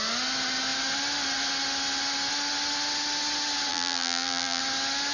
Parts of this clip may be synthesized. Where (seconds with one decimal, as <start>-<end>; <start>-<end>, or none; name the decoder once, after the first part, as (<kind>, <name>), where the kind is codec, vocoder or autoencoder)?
3.7-4.6 (vocoder, BigVGAN v2)

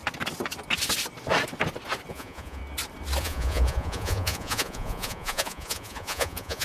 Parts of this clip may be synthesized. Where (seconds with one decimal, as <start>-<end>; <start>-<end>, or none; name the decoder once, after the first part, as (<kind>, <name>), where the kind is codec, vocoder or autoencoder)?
2.1-2.6 (vocoder, Vocos); 3.2-6.6

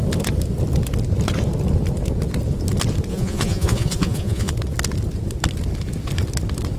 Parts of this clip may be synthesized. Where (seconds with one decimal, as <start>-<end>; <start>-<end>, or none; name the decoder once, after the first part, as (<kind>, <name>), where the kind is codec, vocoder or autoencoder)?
3.1-4.5 (vocoder, Vocos)

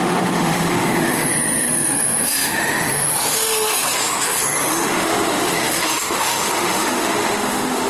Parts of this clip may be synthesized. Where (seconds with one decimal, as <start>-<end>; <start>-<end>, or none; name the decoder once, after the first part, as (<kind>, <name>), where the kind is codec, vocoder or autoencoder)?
0.0-7.9 (autoencoder, DAC-VAE)